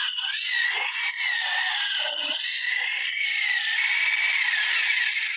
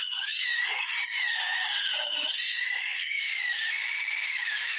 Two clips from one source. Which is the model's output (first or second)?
second